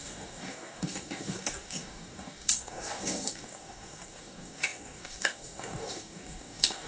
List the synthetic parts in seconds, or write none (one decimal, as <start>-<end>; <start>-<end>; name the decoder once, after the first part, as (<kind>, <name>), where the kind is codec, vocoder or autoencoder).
0.0-6.9 (codec, DAC)